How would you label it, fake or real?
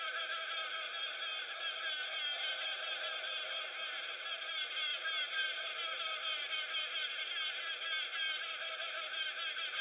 real